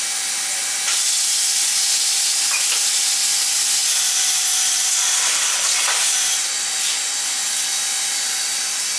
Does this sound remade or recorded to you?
recorded